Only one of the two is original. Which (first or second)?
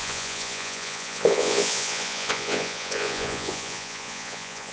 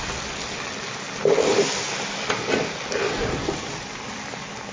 second